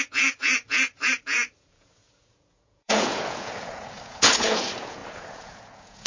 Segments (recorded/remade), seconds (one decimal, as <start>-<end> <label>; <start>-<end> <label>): 0.0-6.1 remade